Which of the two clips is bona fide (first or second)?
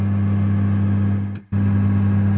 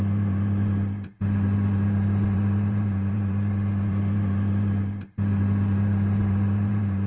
first